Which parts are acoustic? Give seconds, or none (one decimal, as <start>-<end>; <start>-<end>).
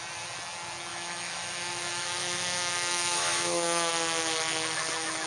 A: 0.0-0.9; 3.9-5.3